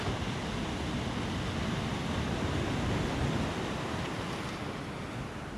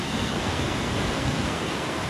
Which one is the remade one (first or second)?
second